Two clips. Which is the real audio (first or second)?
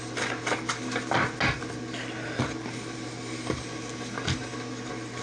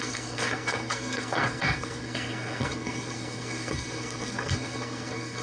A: first